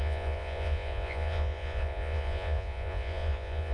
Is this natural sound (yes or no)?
no